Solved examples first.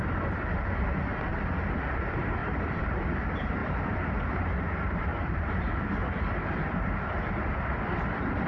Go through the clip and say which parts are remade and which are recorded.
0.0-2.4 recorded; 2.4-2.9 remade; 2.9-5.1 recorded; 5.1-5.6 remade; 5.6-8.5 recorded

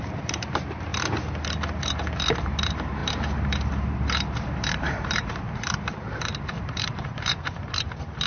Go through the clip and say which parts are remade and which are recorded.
0.0-0.9 remade; 0.9-2.4 recorded; 2.4-8.3 remade

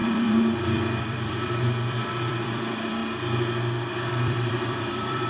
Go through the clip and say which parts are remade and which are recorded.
0.0-3.0 remade; 3.0-4.1 recorded; 4.1-5.3 remade